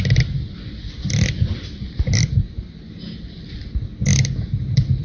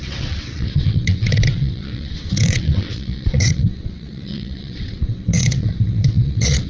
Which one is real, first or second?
first